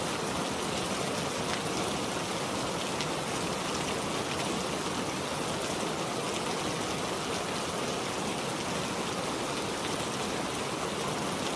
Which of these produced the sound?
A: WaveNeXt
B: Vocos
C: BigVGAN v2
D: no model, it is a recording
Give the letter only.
D